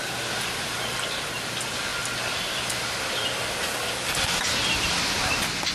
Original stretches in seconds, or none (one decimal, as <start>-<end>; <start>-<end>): 0.0-5.7